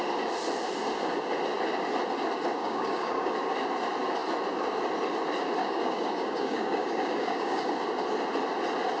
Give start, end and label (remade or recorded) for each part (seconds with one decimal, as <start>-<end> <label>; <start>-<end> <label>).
0.0-2.6 recorded; 2.6-3.3 remade; 3.3-5.6 recorded; 5.6-7.7 remade; 7.7-9.0 recorded